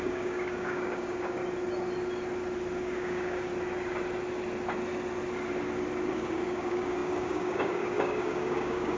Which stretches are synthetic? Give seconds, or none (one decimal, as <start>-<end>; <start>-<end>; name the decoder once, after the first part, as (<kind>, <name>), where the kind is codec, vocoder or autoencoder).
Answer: 0.0-1.4 (codec, DAC); 2.8-3.5; 6.1-9.0